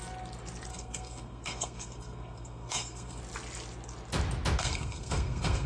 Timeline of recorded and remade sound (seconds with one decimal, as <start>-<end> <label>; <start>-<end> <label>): 0.0-0.7 recorded; 0.7-3.2 remade; 3.2-4.6 recorded; 4.6-5.7 remade

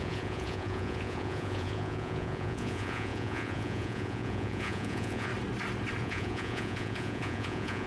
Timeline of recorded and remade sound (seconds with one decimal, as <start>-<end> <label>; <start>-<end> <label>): 0.0-5.3 remade; 5.3-6.0 recorded; 6.0-7.9 remade

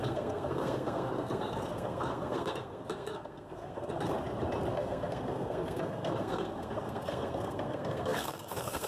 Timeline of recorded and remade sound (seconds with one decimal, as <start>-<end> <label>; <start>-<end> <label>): 0.0-4.1 remade; 4.1-4.7 recorded; 4.7-8.9 remade

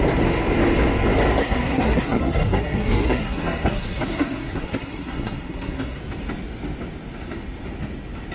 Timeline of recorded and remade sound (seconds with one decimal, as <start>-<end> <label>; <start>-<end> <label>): 0.0-1.4 recorded; 1.4-6.0 remade; 6.0-8.3 recorded

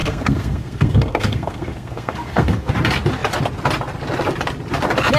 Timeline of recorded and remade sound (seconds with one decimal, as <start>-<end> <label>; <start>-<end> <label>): 0.0-2.7 remade; 2.7-5.2 recorded

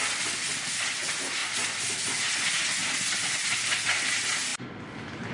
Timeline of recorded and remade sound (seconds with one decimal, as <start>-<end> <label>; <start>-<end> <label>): 0.0-5.3 recorded

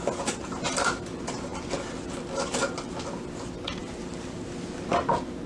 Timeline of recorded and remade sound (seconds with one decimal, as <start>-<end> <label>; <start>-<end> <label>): 0.0-5.5 recorded